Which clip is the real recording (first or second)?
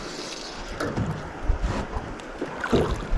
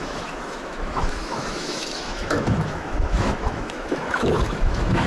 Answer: first